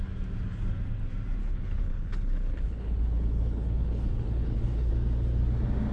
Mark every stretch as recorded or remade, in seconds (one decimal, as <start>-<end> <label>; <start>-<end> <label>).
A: 0.0-1.4 recorded; 1.4-4.9 remade; 4.9-5.9 recorded